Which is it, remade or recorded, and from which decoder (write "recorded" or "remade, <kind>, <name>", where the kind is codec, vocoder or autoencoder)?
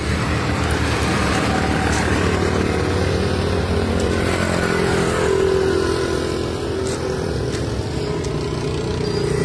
recorded